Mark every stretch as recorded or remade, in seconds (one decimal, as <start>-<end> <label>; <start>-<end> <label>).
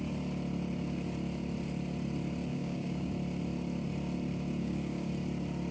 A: 0.0-2.5 recorded; 2.5-3.1 remade; 3.1-4.6 recorded; 4.6-5.1 remade; 5.1-5.7 recorded